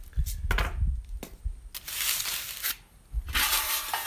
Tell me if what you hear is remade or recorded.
recorded